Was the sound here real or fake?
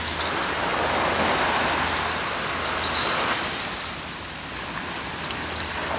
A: real